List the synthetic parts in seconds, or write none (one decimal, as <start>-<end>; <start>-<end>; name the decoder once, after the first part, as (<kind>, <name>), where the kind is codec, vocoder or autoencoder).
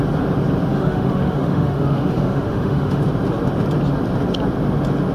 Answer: 0.7-3.0 (autoencoder, DAC-VAE)